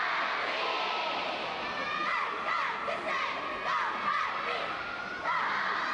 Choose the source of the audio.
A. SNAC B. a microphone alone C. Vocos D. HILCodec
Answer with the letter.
B